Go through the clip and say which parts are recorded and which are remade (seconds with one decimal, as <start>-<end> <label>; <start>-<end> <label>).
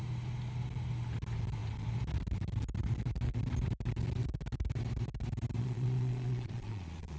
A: 0.0-5.6 recorded; 5.6-7.2 remade